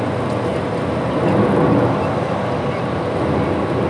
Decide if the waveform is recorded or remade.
recorded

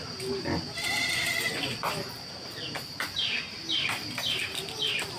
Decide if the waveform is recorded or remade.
remade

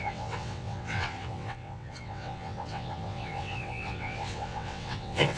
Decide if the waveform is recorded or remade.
remade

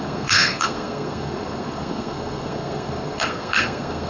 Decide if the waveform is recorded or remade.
remade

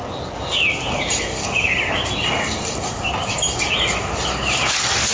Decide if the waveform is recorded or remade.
recorded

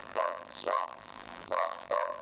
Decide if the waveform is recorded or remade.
remade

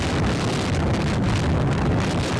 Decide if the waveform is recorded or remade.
recorded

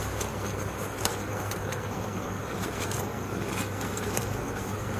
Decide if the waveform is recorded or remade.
remade